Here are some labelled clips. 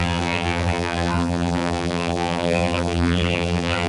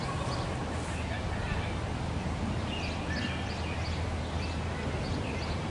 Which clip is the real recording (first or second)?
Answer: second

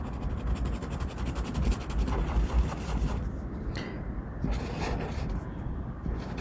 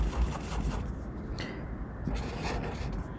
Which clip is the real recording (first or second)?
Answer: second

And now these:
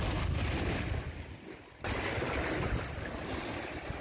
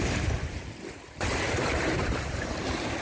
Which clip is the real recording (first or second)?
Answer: first